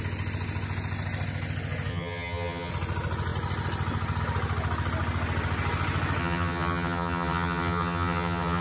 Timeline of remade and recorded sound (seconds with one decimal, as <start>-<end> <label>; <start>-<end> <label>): 0.0-1.9 recorded; 1.9-2.7 remade; 2.7-6.2 recorded; 6.2-8.6 remade